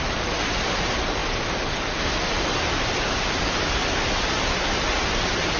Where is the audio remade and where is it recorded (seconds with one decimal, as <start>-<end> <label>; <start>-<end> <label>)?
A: 0.0-5.6 recorded

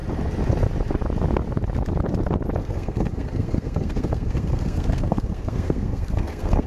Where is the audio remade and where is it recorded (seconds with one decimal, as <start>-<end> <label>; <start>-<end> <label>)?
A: 0.0-2.6 recorded; 2.6-6.7 remade

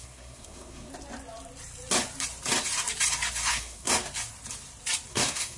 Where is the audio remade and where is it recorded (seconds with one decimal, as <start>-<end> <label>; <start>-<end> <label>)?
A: 0.0-0.9 remade; 0.9-3.5 recorded; 3.5-3.9 remade; 3.9-5.1 recorded; 5.1-5.6 remade